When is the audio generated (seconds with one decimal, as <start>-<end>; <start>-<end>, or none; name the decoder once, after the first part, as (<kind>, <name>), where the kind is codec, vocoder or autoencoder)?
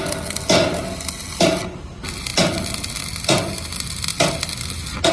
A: none